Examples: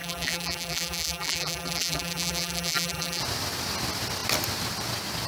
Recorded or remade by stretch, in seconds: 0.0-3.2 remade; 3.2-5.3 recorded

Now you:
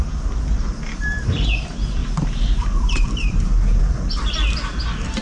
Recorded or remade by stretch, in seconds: 0.0-2.0 recorded; 2.0-3.8 remade; 3.8-5.2 recorded

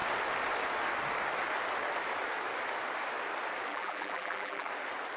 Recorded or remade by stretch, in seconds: 0.0-3.7 recorded; 3.7-4.7 remade; 4.7-5.2 recorded

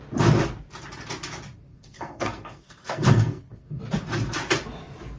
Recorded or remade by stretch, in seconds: 0.0-1.7 recorded; 1.7-3.8 remade; 3.8-5.2 recorded

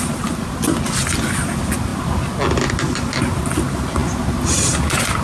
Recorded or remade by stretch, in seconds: 0.0-5.2 recorded

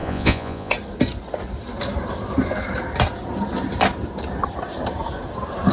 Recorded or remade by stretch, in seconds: 0.0-0.7 remade; 0.7-5.7 recorded

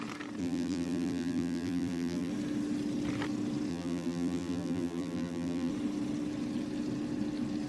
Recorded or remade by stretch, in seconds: 0.0-0.4 recorded; 0.4-2.3 remade; 2.3-3.7 recorded; 3.7-5.7 remade; 5.7-7.7 recorded